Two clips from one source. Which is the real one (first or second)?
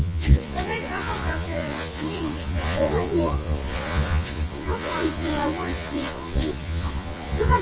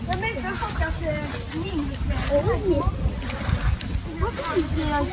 second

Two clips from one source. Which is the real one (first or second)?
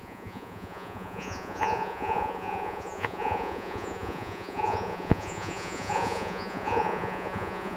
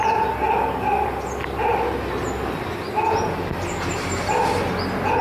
second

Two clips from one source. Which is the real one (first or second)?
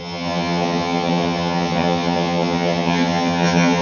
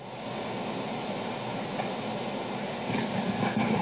second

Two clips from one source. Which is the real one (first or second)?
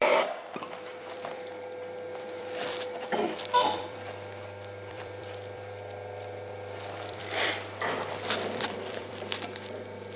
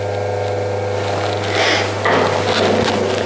second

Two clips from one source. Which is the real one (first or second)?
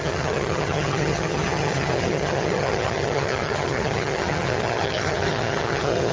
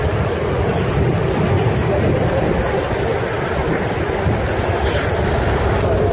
second